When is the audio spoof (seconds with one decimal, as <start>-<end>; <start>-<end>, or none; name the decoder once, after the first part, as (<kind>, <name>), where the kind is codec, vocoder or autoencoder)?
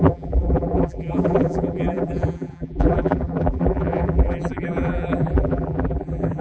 0.0-6.4 (vocoder, BigVGAN v2)